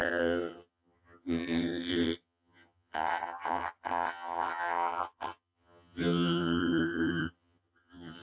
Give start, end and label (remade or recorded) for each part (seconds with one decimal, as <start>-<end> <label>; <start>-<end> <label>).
0.0-8.2 remade